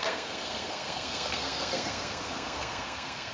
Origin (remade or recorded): remade